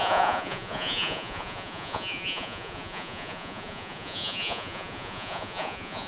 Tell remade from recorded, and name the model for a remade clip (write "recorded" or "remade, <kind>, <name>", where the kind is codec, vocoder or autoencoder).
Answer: remade, vocoder, Vocos